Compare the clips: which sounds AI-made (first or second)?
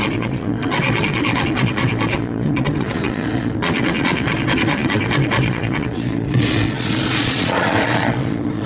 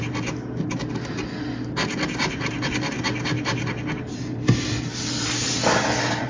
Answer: first